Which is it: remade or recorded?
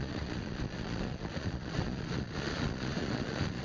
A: remade